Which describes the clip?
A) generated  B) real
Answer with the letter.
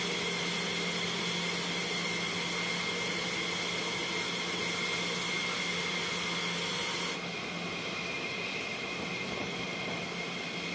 B